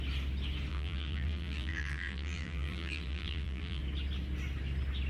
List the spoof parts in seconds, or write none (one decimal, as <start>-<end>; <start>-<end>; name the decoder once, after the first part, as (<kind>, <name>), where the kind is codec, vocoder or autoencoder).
0.7-3.8 (vocoder, BigVGAN v2)